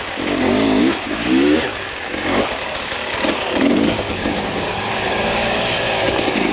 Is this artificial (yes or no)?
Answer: yes